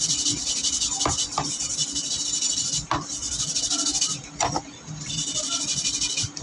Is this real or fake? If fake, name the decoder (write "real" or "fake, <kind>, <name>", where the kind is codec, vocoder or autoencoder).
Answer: real